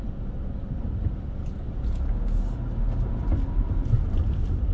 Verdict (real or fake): real